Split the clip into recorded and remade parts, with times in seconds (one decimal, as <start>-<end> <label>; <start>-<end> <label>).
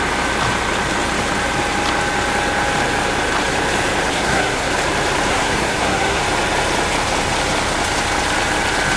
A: 0.0-4.1 recorded; 4.1-4.7 remade; 4.7-5.3 recorded; 5.3-6.2 remade; 6.2-9.0 recorded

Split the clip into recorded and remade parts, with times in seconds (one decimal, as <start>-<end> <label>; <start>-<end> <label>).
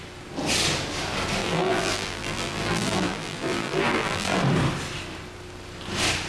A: 0.0-1.4 recorded; 1.4-4.4 remade; 4.4-6.3 recorded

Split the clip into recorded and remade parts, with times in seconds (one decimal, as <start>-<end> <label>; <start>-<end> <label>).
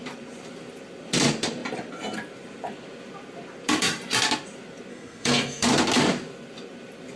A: 0.0-4.9 recorded; 4.9-5.7 remade; 5.7-7.2 recorded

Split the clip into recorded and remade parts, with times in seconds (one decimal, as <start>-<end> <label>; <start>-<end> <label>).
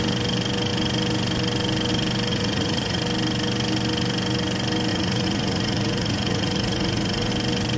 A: 0.0-2.3 recorded; 2.3-3.0 remade; 3.0-4.9 recorded; 4.9-7.3 remade; 7.3-7.8 recorded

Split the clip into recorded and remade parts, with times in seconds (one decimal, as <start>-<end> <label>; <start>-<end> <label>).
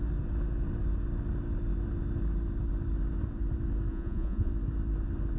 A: 0.0-3.9 recorded; 3.9-4.5 remade; 4.5-5.4 recorded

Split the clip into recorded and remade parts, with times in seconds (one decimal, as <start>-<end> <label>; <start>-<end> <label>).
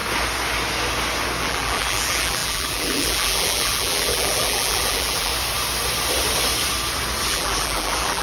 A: 0.0-1.4 recorded; 1.4-5.3 remade; 5.3-7.3 recorded; 7.3-8.2 remade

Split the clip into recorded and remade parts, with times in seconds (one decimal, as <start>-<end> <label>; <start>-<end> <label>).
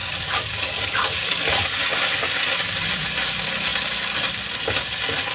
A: 0.0-1.5 remade; 1.5-5.3 recorded